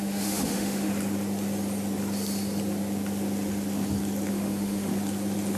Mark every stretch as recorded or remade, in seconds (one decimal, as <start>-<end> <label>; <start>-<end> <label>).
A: 0.0-0.9 remade; 0.9-4.3 recorded; 4.3-4.9 remade; 4.9-5.6 recorded

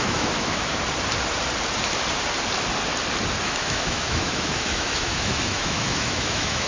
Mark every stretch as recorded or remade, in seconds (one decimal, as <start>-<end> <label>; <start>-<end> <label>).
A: 0.0-0.7 remade; 0.7-3.4 recorded; 3.4-6.7 remade